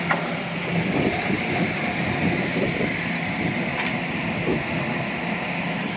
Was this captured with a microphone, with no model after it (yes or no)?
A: yes